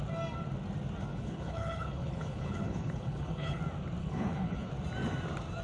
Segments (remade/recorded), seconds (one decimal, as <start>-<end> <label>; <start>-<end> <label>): 0.0-1.1 recorded; 1.1-3.6 remade; 3.6-4.0 recorded; 4.0-4.7 remade; 4.7-5.6 recorded